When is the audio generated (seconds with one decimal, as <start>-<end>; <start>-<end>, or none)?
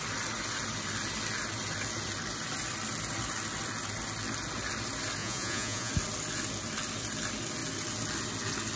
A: 5.2-5.9